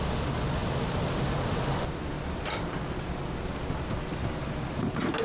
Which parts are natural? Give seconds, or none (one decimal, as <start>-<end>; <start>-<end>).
0.0-5.2